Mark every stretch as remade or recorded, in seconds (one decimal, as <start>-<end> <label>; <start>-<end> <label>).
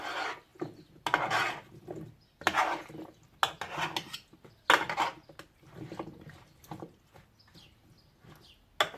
0.0-9.0 recorded